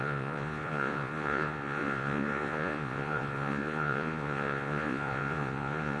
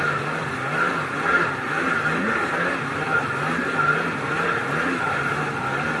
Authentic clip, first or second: second